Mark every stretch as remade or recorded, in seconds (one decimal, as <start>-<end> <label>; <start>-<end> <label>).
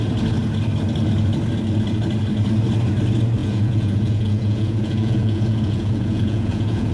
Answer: 0.0-3.4 recorded; 3.4-6.9 remade